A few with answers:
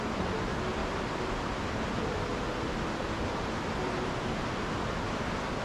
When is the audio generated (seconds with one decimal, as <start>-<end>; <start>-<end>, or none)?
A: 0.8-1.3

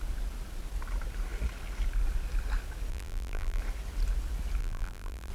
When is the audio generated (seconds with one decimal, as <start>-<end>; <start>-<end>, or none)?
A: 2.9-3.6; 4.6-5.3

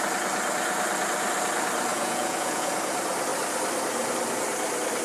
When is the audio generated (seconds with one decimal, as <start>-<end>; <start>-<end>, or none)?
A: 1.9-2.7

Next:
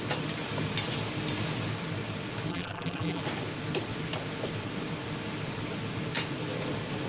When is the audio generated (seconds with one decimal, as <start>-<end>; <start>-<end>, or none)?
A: 2.5-3.2